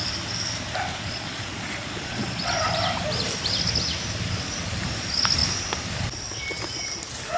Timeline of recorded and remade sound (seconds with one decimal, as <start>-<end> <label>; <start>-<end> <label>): 0.0-0.9 recorded; 0.9-2.7 remade; 2.7-7.4 recorded